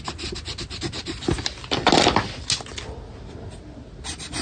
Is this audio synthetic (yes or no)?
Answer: no